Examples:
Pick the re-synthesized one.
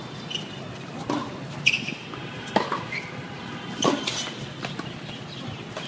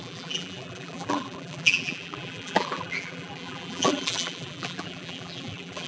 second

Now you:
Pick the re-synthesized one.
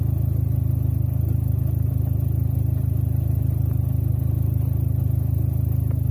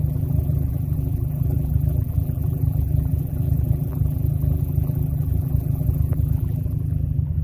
second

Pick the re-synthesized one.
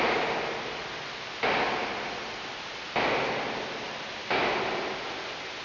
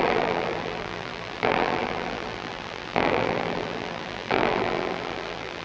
second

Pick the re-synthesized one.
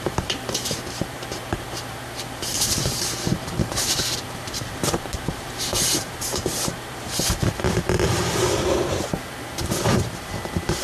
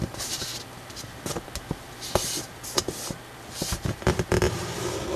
first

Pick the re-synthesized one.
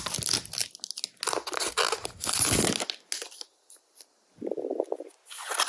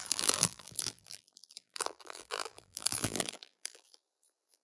second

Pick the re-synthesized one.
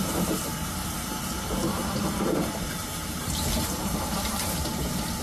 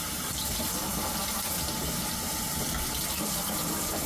first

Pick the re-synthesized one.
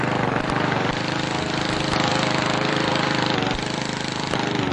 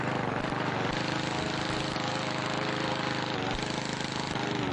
first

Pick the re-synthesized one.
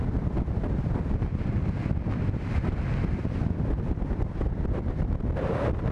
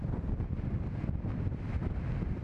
second